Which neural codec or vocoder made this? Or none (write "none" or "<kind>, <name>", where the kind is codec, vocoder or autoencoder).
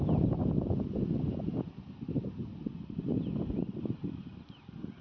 none